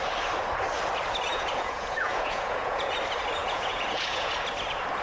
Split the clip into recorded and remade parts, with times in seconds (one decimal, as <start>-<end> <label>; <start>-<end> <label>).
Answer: 0.0-1.3 recorded; 1.3-2.9 remade; 2.9-3.4 recorded; 3.4-4.3 remade; 4.3-5.0 recorded